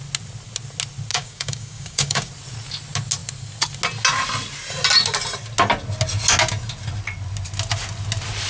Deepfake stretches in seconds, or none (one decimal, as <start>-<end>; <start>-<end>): 1.1-2.3